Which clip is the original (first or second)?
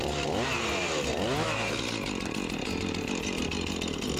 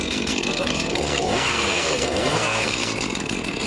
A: first